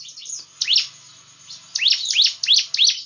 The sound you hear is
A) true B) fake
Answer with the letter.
A